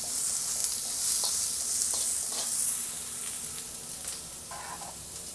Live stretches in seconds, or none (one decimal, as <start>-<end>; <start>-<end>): 0.0-5.3